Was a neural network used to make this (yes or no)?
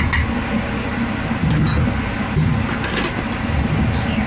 no